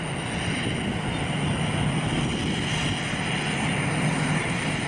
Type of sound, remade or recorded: recorded